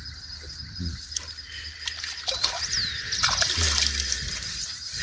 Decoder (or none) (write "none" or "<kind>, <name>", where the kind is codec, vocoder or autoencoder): none